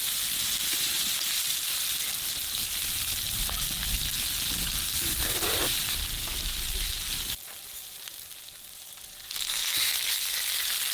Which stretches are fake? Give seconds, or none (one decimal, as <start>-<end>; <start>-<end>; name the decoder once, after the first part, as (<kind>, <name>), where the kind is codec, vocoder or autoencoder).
9.6-10.2 (autoencoder, DAC-VAE)